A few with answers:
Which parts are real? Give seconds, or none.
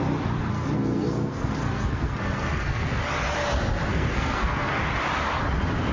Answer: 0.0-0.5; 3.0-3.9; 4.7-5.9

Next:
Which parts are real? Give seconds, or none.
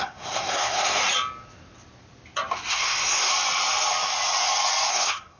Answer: 1.0-2.7; 3.3-4.9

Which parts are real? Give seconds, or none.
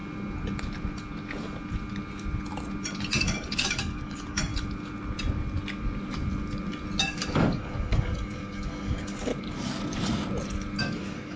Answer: 0.0-3.2; 4.5-7.0; 9.3-10.8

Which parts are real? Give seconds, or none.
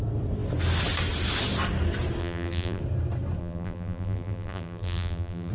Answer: 0.0-2.2; 2.8-3.4